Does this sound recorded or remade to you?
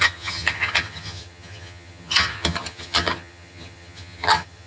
remade